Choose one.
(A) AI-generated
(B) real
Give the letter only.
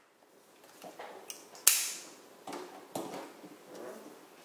B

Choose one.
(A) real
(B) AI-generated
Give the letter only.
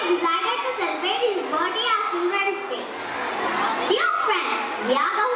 A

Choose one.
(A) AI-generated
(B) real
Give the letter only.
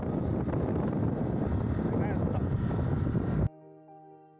B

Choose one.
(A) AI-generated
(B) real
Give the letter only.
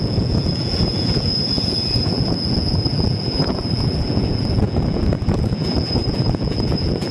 A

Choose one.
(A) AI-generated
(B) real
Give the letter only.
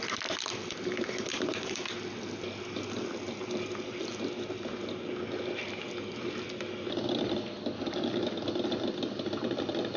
B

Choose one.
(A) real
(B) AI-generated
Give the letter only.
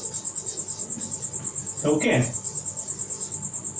A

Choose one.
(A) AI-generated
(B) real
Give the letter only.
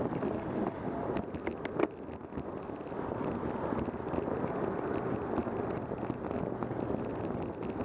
B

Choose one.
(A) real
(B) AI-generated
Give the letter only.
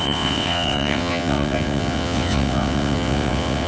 B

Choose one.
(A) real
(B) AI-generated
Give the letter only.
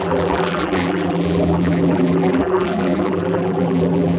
B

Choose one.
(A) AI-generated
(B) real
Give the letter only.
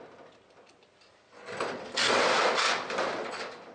B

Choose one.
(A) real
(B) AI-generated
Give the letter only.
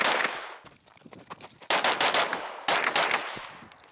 A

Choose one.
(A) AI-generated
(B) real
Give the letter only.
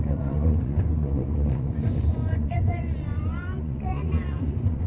A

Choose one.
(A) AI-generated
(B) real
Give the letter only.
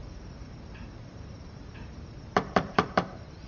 A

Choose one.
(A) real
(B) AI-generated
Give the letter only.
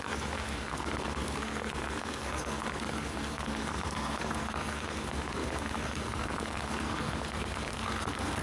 B